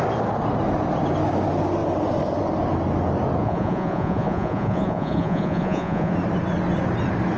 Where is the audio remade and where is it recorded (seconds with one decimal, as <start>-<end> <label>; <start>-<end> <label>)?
0.0-3.4 recorded; 3.4-6.1 remade; 6.1-7.4 recorded